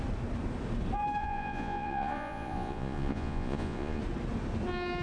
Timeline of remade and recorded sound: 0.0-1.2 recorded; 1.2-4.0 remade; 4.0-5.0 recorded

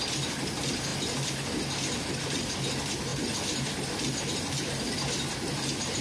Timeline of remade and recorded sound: 0.0-6.0 recorded

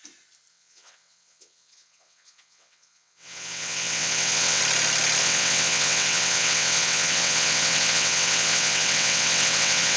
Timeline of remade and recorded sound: 0.0-0.5 recorded; 0.5-4.6 remade; 4.6-5.2 recorded; 5.2-10.0 remade

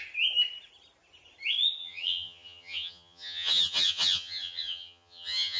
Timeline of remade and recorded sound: 0.0-1.8 recorded; 1.8-5.6 remade